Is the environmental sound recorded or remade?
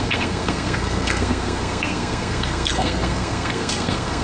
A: remade